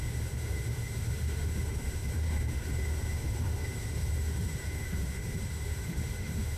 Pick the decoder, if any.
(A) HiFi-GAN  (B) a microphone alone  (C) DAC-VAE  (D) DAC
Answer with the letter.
C